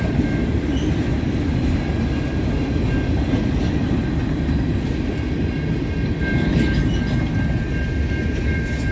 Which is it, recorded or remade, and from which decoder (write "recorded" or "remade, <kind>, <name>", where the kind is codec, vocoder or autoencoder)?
recorded